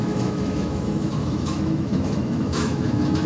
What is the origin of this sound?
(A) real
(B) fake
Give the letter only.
B